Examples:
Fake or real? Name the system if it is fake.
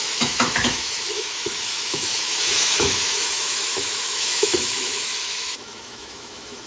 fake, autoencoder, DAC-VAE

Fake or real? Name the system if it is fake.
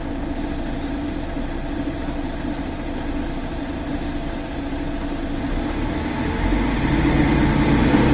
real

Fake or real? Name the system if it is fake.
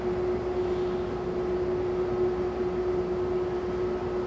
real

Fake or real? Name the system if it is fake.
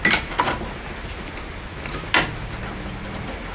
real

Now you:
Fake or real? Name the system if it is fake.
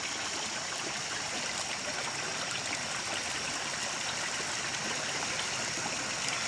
real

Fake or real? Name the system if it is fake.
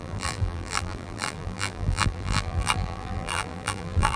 fake, vocoder, BigVGAN v2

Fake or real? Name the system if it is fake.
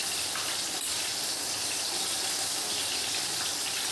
real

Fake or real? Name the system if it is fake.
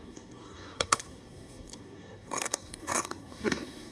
fake, codec, SNAC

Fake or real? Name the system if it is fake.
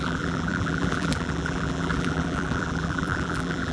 fake, vocoder, BigVGAN v2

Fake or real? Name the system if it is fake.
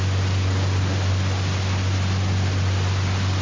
real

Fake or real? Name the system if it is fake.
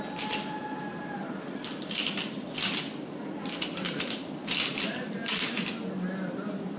real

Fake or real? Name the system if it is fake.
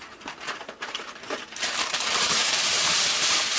fake, vocoder, BigVGAN v2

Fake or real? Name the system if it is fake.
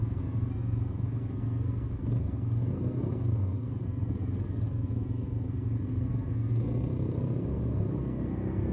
fake, codec, SNAC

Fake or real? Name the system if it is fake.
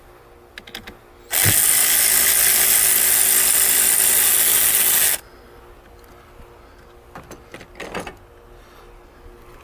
real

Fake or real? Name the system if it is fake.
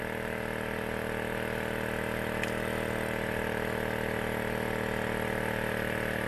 real